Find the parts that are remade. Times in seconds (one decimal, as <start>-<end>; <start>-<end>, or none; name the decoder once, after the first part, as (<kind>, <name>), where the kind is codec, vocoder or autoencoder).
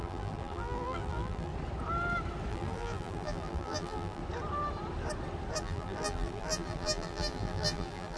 0.0-1.5 (vocoder, BigVGAN v2); 2.5-4.2; 5.6-8.2